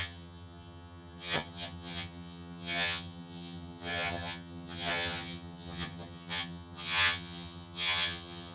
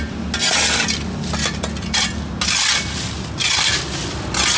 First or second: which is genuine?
second